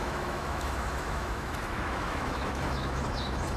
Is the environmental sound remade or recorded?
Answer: remade